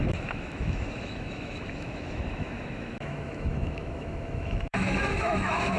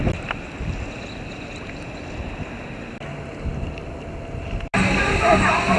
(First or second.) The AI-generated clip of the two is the first